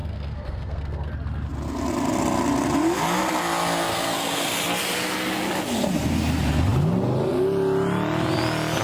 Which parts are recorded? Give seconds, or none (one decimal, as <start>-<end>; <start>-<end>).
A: 1.1-3.9; 4.5-8.8